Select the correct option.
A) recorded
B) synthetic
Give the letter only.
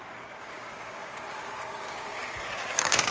B